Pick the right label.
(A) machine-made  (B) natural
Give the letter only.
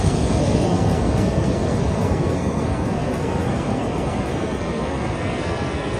A